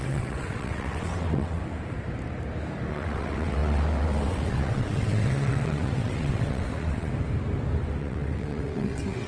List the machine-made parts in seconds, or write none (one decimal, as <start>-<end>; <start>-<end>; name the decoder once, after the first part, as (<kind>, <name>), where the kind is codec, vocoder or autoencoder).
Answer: 0.0-1.6 (vocoder, WaveNeXt); 2.9-7.1; 8.0-9.3